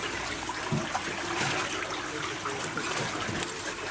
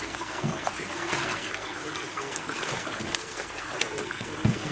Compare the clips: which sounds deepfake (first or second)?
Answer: second